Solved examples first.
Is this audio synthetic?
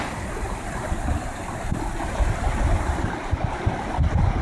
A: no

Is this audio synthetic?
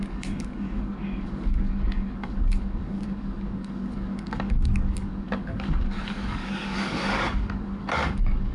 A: yes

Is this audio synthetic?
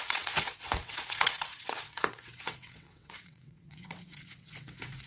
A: yes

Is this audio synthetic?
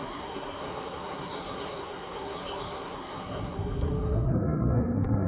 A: yes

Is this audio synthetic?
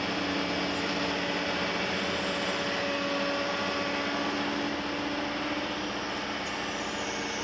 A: no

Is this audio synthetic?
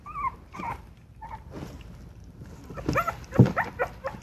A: no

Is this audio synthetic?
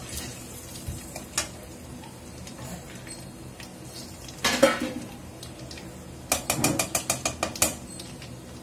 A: no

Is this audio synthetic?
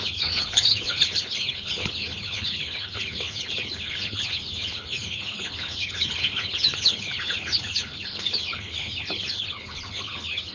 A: yes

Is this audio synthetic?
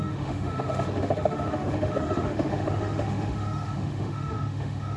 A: yes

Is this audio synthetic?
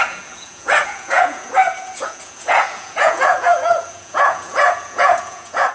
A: yes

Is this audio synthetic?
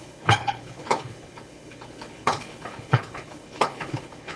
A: yes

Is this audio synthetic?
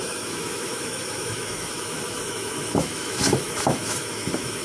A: yes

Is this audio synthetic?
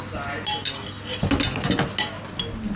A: no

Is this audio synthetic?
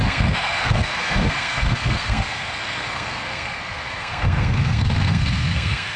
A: yes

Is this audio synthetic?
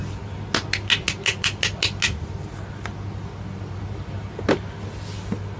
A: no